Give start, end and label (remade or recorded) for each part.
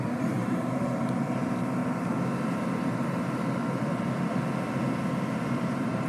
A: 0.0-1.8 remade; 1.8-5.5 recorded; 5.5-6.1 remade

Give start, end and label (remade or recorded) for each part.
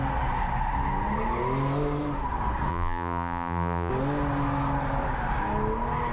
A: 0.0-2.7 recorded; 2.7-3.9 remade; 3.9-6.1 recorded